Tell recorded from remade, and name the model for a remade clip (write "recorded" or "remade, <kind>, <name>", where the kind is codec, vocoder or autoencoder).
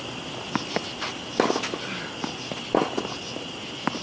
recorded